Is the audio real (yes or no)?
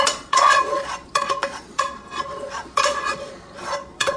no